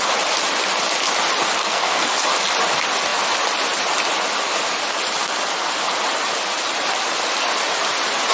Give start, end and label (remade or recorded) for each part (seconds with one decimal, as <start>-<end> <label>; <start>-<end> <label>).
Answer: 0.0-1.6 recorded; 1.6-2.1 remade; 2.1-8.3 recorded